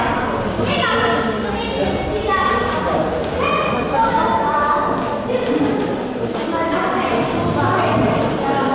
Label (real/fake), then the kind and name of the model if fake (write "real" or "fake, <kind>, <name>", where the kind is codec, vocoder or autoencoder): real